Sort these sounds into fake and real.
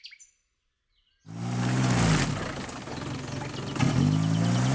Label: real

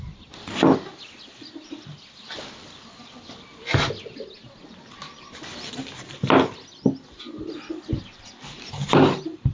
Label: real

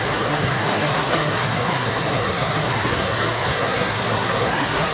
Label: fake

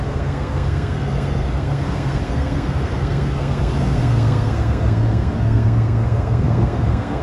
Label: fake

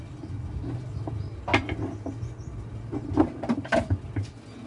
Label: real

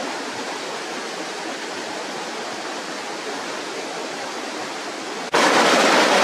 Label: real